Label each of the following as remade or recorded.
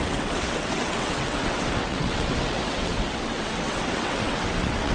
remade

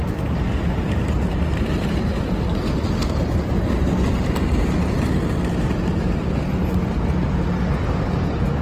recorded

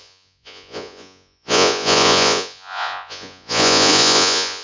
remade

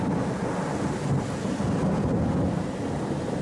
recorded